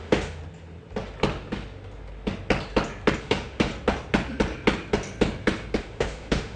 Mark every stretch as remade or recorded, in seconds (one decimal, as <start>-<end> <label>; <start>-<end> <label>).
0.0-0.4 remade; 0.4-3.2 recorded; 3.2-3.7 remade; 3.7-5.8 recorded; 5.8-6.6 remade